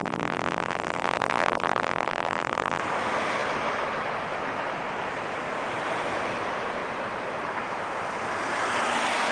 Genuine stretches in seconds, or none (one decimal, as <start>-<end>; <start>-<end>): 2.8-9.3